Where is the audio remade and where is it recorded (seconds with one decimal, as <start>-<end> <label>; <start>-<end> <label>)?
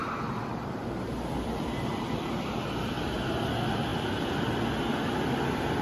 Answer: 0.0-2.8 remade; 2.8-3.9 recorded; 3.9-4.7 remade; 4.7-5.8 recorded